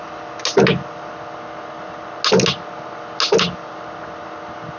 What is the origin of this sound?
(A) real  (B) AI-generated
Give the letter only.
A